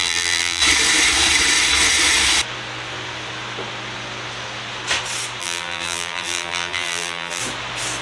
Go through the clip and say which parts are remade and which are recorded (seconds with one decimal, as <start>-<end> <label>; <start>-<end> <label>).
0.0-0.6 remade; 0.6-5.4 recorded; 5.4-7.4 remade; 7.4-8.0 recorded